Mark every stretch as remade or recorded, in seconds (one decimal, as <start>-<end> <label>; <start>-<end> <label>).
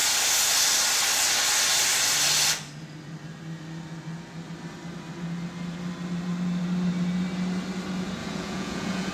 0.0-8.2 recorded; 8.2-9.1 remade